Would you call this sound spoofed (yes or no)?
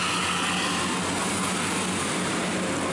no